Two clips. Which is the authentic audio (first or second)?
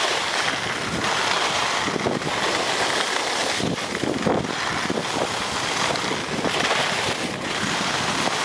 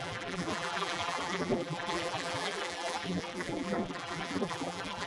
first